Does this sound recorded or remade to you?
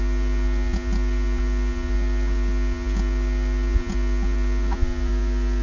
recorded